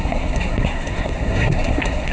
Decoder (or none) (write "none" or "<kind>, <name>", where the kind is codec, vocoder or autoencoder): codec, SNAC